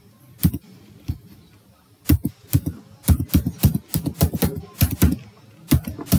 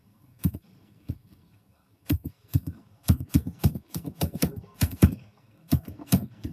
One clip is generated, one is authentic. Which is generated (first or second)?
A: second